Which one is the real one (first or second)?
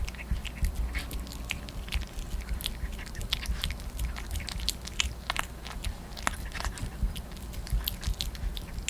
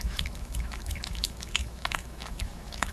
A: first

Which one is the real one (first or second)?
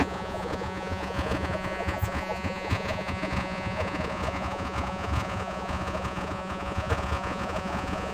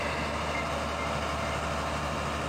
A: second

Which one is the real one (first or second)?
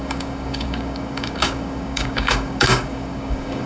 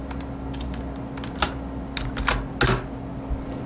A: second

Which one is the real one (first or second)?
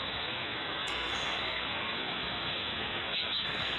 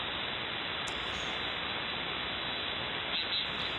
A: second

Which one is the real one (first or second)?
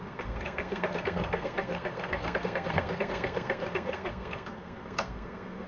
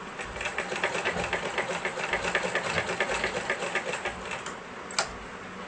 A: second